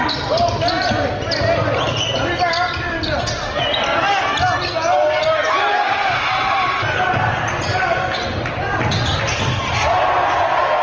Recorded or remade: recorded